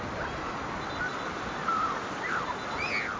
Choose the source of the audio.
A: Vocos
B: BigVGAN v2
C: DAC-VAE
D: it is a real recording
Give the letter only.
D